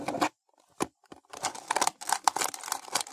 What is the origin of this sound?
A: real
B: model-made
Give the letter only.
B